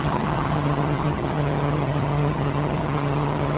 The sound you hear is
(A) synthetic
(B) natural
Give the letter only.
A